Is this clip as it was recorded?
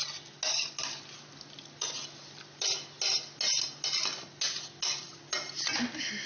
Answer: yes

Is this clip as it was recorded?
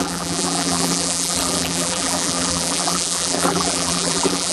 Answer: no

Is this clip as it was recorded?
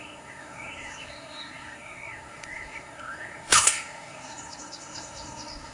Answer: no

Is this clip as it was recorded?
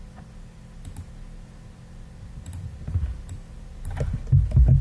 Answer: yes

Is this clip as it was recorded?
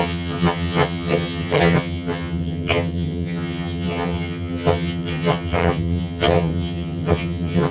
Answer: no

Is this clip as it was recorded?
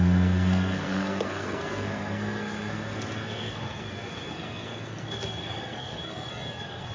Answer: no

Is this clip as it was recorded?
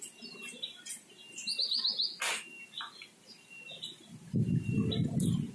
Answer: yes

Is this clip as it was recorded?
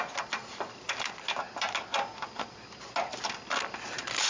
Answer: yes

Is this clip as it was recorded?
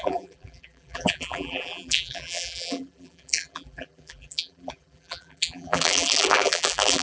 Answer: no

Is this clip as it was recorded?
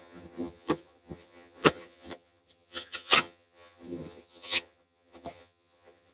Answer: no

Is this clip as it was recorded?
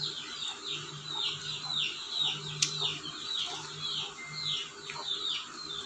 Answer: yes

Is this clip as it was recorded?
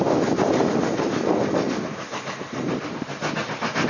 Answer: yes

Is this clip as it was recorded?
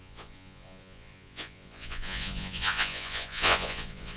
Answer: no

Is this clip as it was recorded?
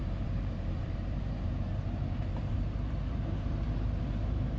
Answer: no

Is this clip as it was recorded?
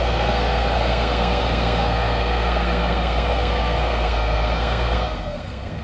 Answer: no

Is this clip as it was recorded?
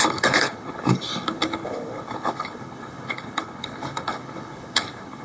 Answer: no